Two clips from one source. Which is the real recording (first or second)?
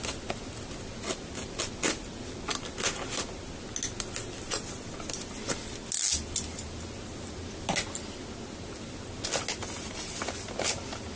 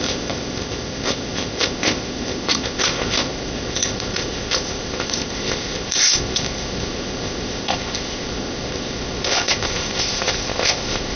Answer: first